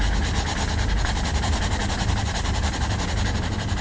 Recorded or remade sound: recorded